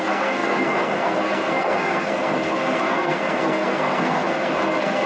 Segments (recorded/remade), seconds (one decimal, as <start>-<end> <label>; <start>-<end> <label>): 0.0-5.1 remade